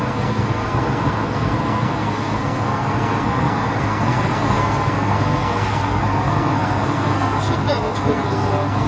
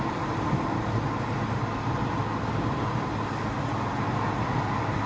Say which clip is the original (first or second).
second